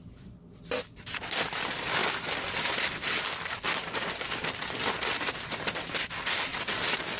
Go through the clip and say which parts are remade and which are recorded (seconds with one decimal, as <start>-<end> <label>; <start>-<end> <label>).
0.0-7.2 recorded